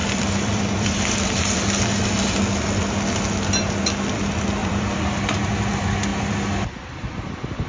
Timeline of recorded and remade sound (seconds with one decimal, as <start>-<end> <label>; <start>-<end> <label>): 0.0-1.6 remade; 1.6-4.6 recorded; 4.6-5.2 remade; 5.2-7.7 recorded